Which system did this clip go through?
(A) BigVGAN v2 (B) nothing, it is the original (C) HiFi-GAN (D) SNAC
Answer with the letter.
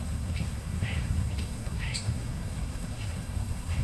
D